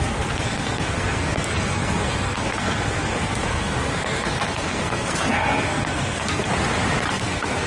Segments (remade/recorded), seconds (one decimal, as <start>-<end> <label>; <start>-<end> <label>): 0.0-6.5 remade; 6.5-7.1 recorded; 7.1-7.7 remade